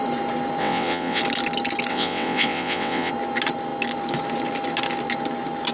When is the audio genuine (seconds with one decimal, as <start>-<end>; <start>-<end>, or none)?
0.0-0.6; 1.2-1.9; 3.1-5.7